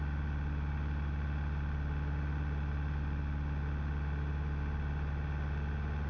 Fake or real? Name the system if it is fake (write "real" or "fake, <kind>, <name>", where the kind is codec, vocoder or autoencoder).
real